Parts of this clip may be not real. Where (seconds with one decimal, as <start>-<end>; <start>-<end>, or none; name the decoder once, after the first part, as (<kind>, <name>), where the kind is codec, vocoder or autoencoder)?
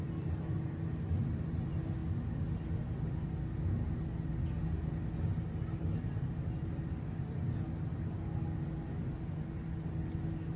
none